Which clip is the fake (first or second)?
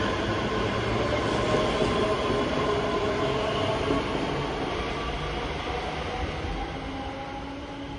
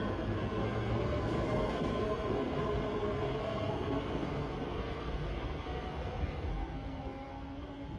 second